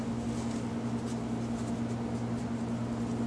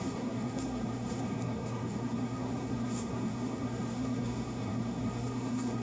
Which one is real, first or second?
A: first